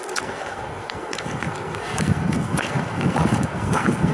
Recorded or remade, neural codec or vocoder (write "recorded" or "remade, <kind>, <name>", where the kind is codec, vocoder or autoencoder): remade, codec, SNAC